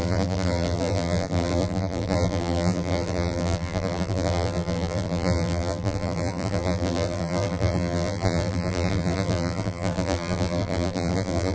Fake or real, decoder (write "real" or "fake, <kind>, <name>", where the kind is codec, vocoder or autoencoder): fake, vocoder, BigVGAN v2